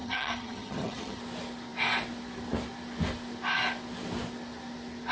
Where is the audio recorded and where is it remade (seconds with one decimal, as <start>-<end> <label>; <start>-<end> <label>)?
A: 0.0-1.2 remade; 1.2-5.1 recorded